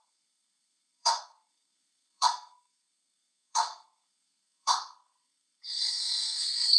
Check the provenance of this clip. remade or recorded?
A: remade